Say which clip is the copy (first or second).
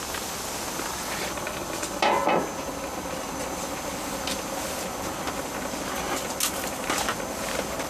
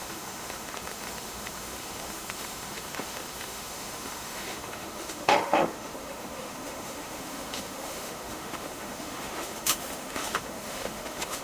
second